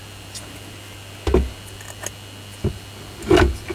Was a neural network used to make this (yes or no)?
no